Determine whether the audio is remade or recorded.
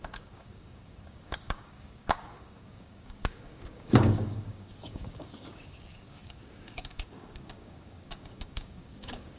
remade